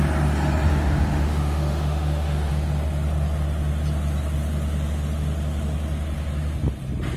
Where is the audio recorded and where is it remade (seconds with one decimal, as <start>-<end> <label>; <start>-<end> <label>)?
0.0-0.7 recorded; 0.7-2.5 remade; 2.5-7.2 recorded